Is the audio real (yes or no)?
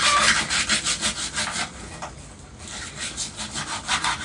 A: yes